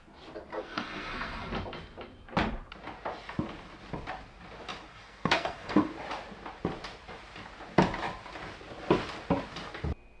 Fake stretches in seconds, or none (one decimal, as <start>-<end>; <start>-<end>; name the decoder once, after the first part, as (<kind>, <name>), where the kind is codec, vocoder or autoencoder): 0.5-1.5 (codec, SNAC); 4.9-5.9